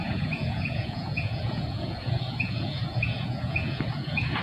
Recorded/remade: remade